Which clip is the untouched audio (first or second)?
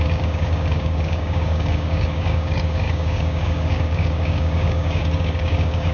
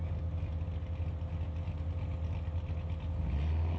second